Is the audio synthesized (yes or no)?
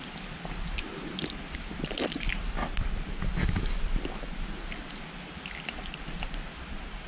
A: no